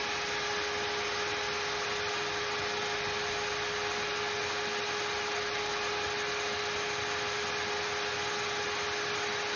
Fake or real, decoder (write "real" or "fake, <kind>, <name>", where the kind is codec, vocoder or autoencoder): real